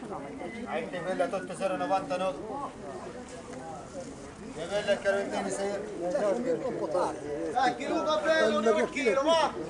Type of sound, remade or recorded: recorded